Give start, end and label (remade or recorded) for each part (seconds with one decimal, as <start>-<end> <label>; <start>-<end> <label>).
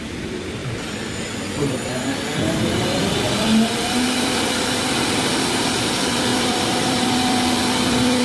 0.0-6.3 recorded; 6.3-7.1 remade; 7.1-8.2 recorded